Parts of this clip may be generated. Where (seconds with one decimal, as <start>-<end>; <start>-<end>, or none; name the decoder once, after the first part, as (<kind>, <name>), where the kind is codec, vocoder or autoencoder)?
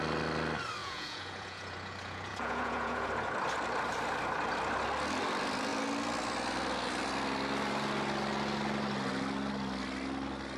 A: 0.8-3.1 (vocoder, Vocos)